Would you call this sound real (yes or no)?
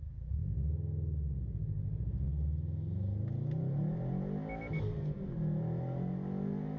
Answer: yes